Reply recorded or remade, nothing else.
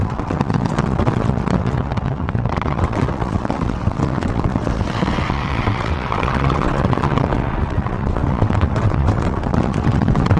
remade